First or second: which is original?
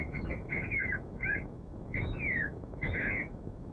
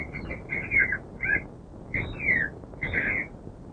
second